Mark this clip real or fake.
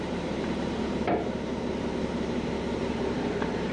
fake